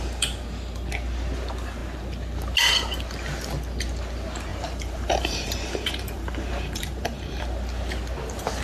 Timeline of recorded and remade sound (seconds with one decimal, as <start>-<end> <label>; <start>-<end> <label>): 0.0-4.5 recorded; 4.5-7.4 remade; 7.4-8.6 recorded